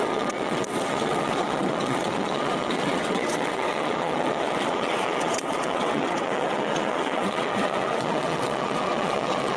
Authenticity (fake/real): fake